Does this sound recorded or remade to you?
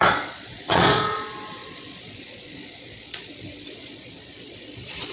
remade